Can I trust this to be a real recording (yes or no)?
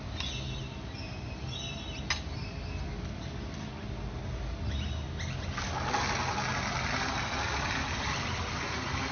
yes